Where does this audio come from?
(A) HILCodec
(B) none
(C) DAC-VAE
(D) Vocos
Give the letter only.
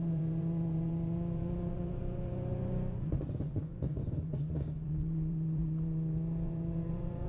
D